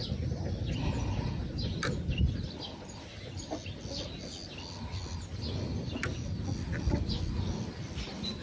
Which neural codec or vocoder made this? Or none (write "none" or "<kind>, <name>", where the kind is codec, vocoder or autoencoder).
none